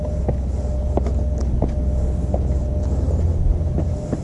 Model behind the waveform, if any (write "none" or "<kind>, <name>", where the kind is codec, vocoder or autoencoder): none